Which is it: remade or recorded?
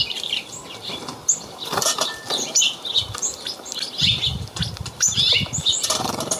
recorded